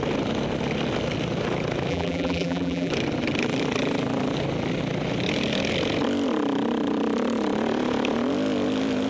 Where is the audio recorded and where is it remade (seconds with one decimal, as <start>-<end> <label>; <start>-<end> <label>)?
0.0-1.9 recorded; 1.9-2.9 remade; 2.9-9.1 recorded